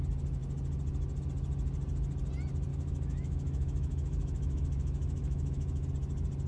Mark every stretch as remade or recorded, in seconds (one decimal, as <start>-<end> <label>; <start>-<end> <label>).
0.0-2.7 recorded; 2.7-5.9 remade; 5.9-6.5 recorded